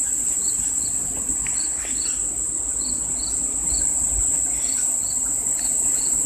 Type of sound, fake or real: real